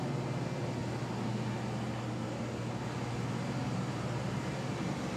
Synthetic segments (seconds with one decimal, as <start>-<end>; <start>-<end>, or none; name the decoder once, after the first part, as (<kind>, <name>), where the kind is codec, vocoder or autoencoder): 3.6-4.7 (vocoder, BigVGAN v2)